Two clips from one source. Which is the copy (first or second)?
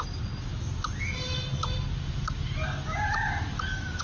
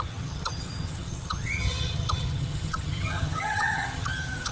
second